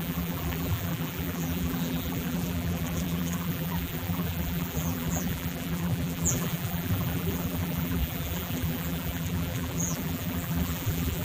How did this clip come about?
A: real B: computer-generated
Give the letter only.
B